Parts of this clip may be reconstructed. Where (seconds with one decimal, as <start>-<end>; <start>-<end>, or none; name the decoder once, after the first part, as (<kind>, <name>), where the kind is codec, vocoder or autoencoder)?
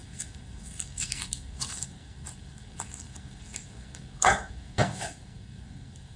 0.0-6.2 (codec, SNAC)